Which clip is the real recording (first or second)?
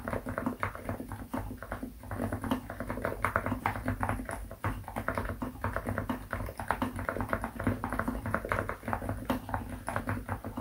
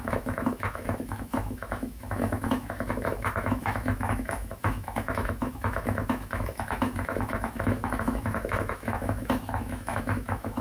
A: first